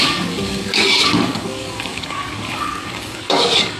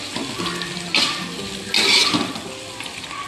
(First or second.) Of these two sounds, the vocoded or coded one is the first